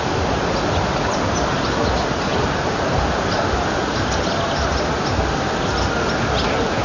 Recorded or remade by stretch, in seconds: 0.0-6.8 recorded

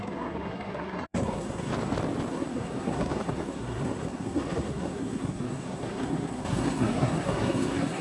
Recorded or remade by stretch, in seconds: 0.0-1.7 remade; 1.7-2.3 recorded; 2.3-8.0 remade

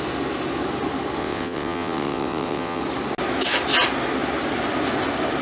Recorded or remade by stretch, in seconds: 0.0-1.2 recorded; 1.2-2.8 remade; 2.8-5.4 recorded

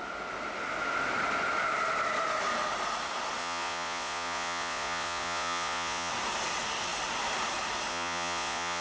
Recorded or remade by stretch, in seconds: 0.0-3.4 recorded; 3.4-6.1 remade; 6.1-7.9 recorded; 7.9-8.8 remade

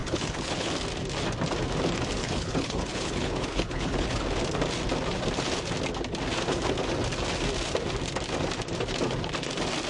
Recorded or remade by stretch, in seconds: 0.0-0.7 remade; 0.7-2.2 recorded; 2.2-4.2 remade; 4.2-9.9 recorded

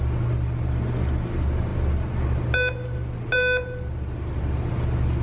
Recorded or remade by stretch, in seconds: 0.0-5.2 recorded

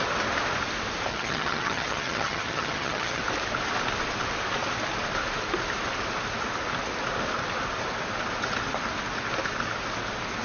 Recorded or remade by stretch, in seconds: 0.0-1.1 recorded; 1.1-3.2 remade; 3.2-10.4 recorded

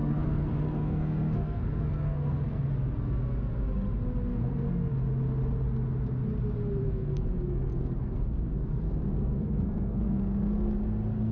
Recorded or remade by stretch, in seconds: 0.0-2.7 remade; 2.7-4.3 recorded; 4.3-4.9 remade; 4.9-6.8 recorded; 6.8-10.7 remade; 10.7-11.3 recorded